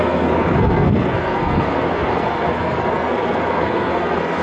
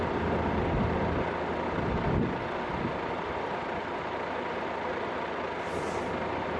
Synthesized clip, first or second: first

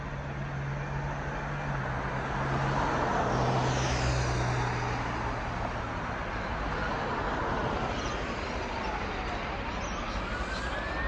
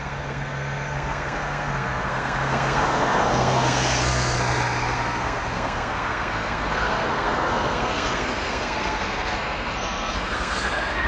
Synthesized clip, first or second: second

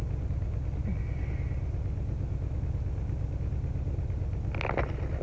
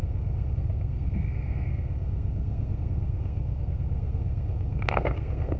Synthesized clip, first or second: second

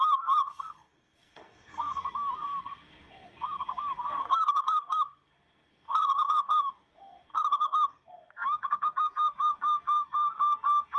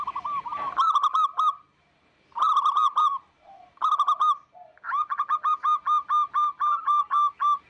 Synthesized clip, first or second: first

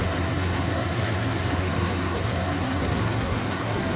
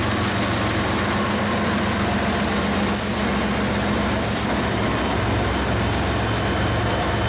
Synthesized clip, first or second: first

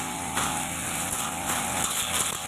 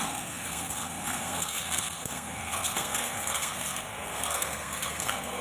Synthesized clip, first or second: second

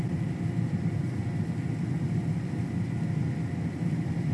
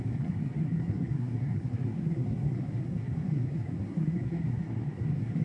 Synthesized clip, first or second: second